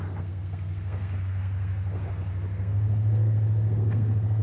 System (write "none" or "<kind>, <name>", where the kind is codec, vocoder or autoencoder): codec, SNAC